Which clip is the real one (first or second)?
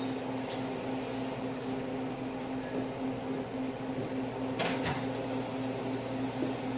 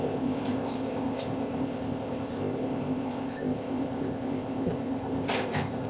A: first